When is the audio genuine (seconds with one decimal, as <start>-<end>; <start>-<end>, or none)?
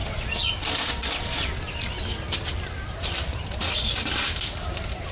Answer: 0.0-5.1